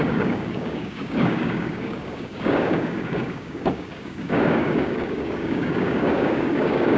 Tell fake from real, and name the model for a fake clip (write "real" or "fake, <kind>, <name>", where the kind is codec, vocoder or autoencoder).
fake, codec, DAC